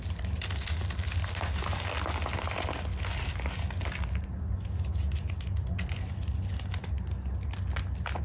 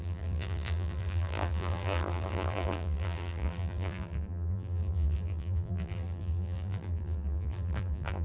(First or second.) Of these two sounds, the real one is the first